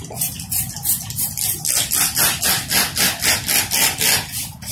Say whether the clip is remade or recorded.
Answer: recorded